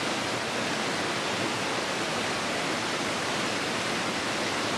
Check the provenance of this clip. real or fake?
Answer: real